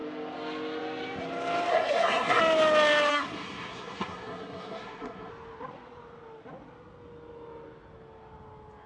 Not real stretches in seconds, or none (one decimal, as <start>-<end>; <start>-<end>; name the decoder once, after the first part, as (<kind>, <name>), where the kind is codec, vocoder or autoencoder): 1.7-2.4 (codec, SNAC); 3.1-5.3